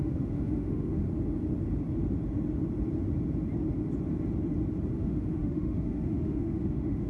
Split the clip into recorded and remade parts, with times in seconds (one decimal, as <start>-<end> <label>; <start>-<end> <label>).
0.0-1.0 remade; 1.0-4.9 recorded; 4.9-7.1 remade